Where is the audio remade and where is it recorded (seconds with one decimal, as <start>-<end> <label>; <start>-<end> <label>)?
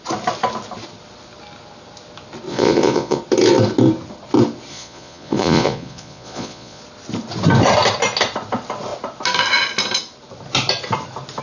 0.0-2.5 recorded; 2.5-3.2 remade; 3.2-4.7 recorded; 4.7-6.8 remade; 6.8-11.4 recorded